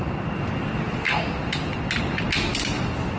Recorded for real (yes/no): yes